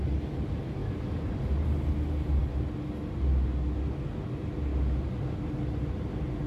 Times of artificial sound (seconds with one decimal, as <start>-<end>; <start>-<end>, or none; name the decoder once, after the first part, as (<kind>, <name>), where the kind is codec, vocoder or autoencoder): none